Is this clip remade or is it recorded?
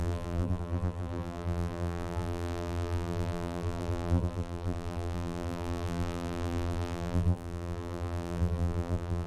remade